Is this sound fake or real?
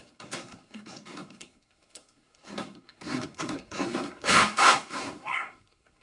fake